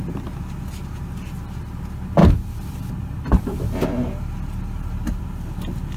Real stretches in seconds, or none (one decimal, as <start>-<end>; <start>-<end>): 0.0-6.0